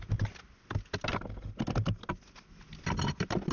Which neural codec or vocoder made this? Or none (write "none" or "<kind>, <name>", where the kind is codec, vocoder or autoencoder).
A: none